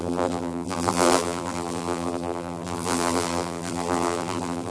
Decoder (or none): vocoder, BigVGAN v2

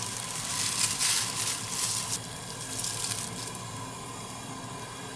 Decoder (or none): none